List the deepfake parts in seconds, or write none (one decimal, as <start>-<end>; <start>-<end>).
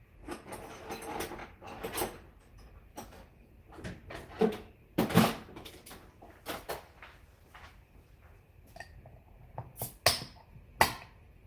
2.9-3.5